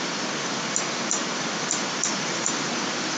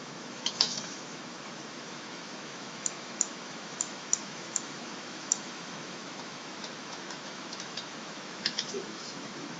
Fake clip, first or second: second